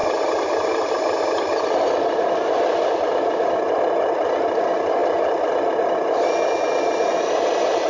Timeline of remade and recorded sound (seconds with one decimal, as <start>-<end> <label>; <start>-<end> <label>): 0.0-7.1 recorded; 7.1-7.9 remade